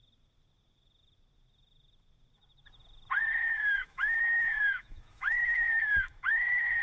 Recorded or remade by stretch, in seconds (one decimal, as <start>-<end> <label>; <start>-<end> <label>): 0.0-3.4 recorded; 3.4-6.8 remade